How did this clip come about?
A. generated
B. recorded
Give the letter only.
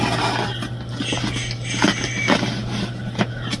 B